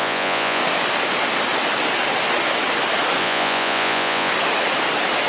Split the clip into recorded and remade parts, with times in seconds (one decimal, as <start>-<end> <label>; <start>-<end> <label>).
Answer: 0.0-0.6 remade; 0.6-3.2 recorded; 3.2-4.3 remade; 4.3-5.3 recorded